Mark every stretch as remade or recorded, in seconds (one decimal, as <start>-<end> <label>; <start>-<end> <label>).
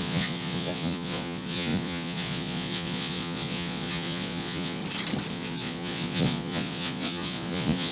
0.0-4.8 remade; 4.8-5.3 recorded; 5.3-7.9 remade